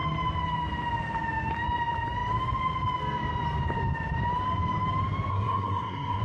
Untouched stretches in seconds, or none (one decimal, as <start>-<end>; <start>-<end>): 0.0-5.3